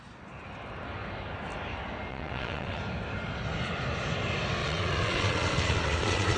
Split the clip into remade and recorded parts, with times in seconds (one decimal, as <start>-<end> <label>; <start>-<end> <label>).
0.0-2.1 recorded; 2.1-2.8 remade; 2.8-4.6 recorded; 4.6-6.4 remade

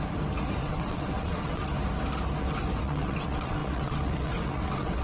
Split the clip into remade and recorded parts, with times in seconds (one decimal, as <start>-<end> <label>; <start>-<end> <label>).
0.0-0.6 recorded; 0.6-1.6 remade; 1.6-2.8 recorded; 2.8-5.0 remade

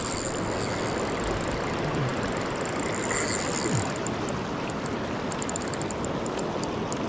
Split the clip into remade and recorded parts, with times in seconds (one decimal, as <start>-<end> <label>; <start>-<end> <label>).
0.0-7.1 recorded

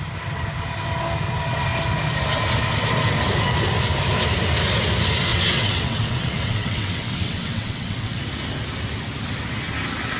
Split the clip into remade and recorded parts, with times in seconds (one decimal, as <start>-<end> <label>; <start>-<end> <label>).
0.0-5.3 recorded; 5.3-8.2 remade; 8.2-10.2 recorded

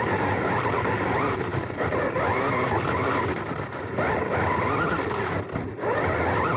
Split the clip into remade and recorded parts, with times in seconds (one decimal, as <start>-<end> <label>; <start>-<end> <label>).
0.0-6.6 recorded

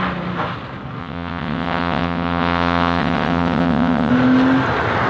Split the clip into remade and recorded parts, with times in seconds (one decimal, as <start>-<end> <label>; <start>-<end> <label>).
0.0-1.0 recorded; 1.0-4.1 remade; 4.1-5.1 recorded